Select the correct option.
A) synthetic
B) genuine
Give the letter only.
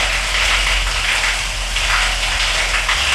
B